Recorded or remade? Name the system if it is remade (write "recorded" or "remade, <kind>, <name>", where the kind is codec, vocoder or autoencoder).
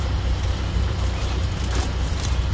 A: recorded